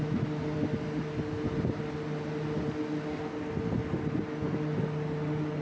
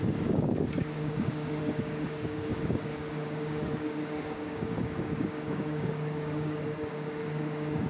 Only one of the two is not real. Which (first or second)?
second